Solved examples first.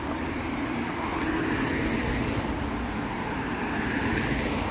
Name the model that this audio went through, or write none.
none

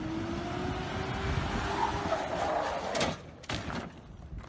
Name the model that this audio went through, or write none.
none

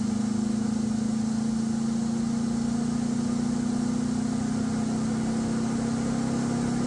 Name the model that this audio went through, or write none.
none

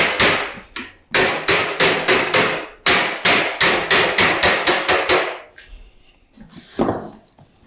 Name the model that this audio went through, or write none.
none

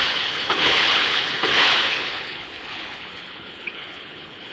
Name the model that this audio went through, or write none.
codec, HILCodec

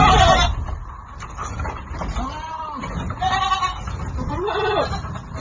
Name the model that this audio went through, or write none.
none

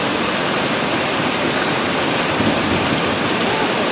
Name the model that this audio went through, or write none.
none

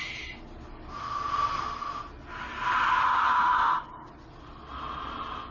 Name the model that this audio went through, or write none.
none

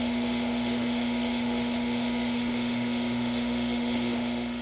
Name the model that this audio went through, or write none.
autoencoder, DAC-VAE